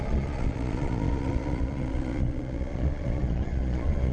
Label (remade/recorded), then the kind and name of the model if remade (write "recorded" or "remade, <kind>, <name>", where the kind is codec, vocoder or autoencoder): remade, vocoder, Vocos